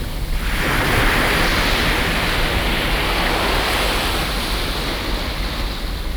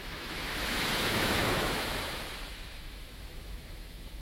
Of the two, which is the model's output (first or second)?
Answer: second